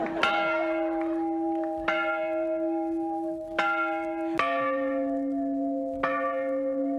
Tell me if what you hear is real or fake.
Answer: real